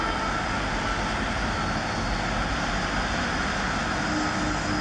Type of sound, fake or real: real